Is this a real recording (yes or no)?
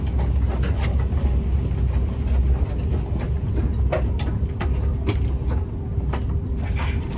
yes